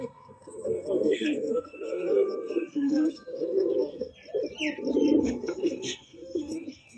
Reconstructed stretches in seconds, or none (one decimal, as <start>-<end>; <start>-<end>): 0.0-4.1; 5.2-7.0